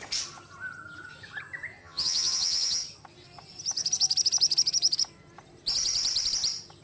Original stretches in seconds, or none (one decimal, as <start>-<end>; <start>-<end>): 0.0-1.8; 2.8-6.8